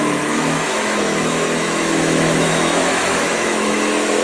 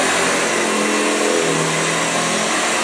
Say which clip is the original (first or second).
second